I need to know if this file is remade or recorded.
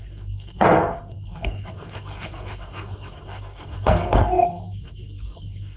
remade